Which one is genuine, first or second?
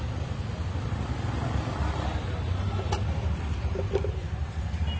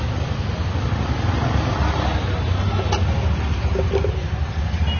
second